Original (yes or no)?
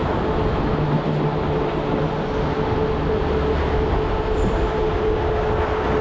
yes